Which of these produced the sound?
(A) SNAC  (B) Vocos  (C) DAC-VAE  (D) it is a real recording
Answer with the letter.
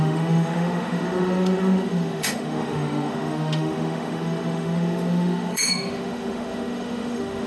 C